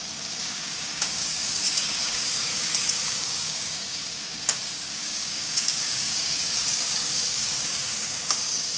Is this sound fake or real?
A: fake